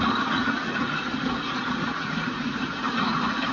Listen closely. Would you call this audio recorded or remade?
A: remade